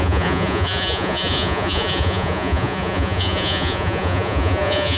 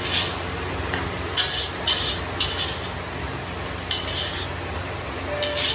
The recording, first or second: second